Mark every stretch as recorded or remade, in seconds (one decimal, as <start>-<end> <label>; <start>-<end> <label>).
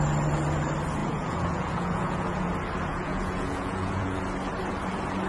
0.0-1.0 recorded; 1.0-2.5 remade; 2.5-2.9 recorded; 2.9-4.2 remade; 4.2-5.3 recorded